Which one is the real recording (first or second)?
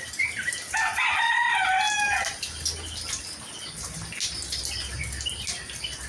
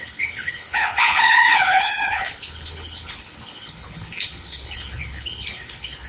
first